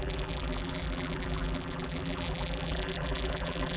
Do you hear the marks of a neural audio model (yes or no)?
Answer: yes